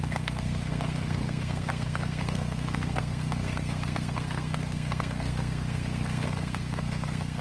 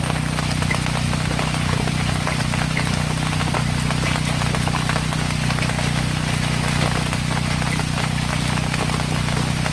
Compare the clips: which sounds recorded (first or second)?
second